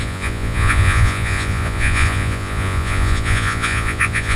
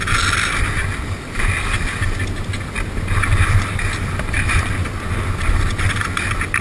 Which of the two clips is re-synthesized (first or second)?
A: first